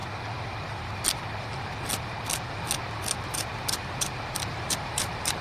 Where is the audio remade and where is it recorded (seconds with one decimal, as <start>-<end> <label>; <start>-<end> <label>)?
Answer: 0.0-3.2 recorded; 3.2-5.4 remade